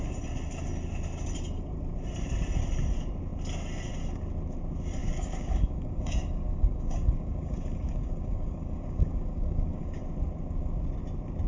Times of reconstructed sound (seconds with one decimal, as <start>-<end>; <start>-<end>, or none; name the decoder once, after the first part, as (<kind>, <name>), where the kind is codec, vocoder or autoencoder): 5.0-10.0 (codec, DAC)